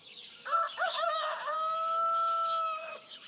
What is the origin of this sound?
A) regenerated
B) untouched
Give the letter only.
A